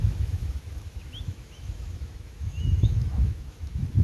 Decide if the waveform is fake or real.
fake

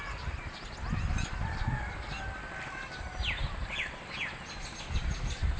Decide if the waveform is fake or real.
real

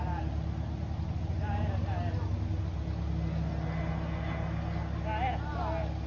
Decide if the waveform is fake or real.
real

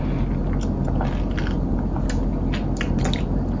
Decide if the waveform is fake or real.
real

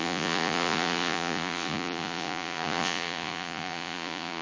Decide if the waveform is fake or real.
fake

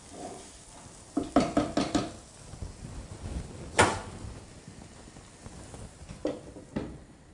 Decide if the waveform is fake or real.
real